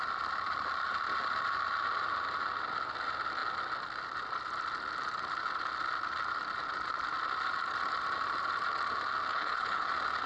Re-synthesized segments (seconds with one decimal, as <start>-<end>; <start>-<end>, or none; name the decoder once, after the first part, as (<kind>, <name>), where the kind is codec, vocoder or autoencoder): 9.3-9.9 (codec, HILCodec)